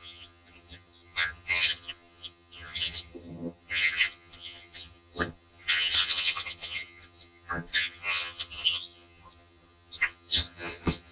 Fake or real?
fake